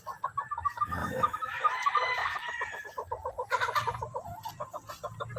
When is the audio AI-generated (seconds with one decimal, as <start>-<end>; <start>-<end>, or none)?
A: 1.0-1.6